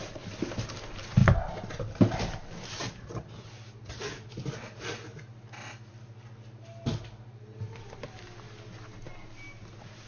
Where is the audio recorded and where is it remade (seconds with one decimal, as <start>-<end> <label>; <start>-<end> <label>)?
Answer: 0.0-10.1 recorded